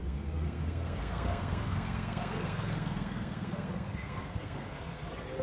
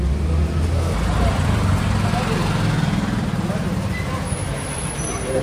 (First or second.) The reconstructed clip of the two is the first